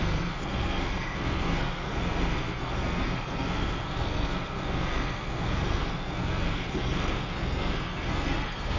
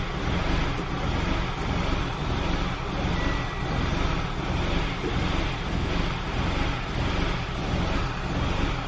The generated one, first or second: first